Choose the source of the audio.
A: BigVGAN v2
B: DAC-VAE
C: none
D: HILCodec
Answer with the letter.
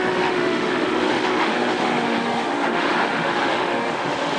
B